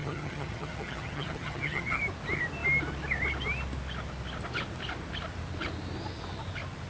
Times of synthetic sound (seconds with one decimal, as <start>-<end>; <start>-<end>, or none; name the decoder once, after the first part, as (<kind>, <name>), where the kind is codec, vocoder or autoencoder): 0.0-2.0 (vocoder, HiFi-GAN)